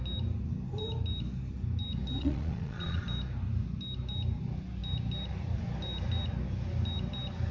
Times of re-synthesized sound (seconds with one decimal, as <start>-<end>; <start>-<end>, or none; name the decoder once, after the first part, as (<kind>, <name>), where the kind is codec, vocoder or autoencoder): 2.2-3.0 (vocoder, Vocos)